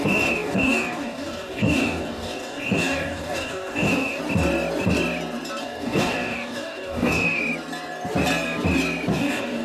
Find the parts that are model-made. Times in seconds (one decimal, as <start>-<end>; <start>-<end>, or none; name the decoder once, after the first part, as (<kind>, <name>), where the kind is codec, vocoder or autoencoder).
0.0-4.2 (codec, DAC); 5.6-7.4; 9.1-9.6